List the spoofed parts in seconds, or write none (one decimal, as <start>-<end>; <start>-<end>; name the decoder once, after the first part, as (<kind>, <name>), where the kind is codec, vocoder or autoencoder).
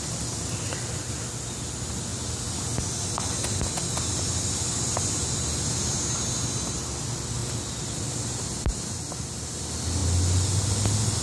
10.0-10.6 (vocoder, BigVGAN v2)